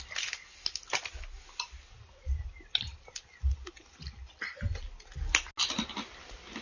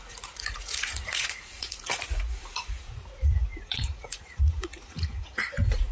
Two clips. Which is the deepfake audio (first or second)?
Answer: second